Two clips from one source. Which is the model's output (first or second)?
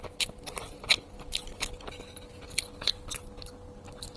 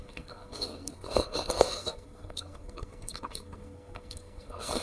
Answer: second